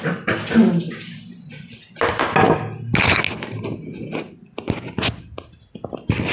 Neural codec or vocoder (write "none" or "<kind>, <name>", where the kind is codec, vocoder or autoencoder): none